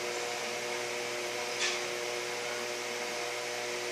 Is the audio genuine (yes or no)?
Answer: yes